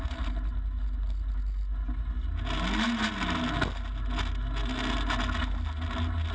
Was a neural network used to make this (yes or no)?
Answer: no